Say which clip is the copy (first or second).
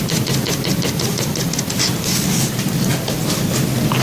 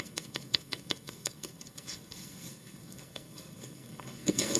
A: second